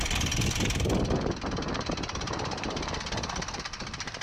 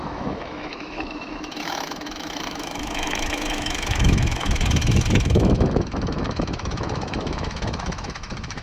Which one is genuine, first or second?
first